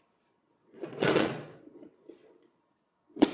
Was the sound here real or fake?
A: fake